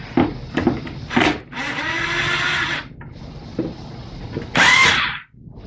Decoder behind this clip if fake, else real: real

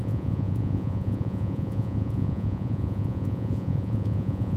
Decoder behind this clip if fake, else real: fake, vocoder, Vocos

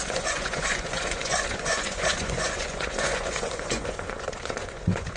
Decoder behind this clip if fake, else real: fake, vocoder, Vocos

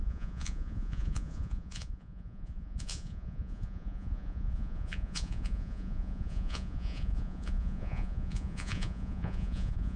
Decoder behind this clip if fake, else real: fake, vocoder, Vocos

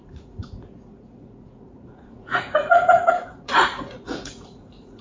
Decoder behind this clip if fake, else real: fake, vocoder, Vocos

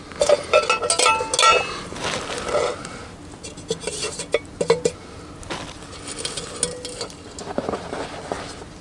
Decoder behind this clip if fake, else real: real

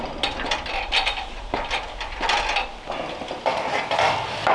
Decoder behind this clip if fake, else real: real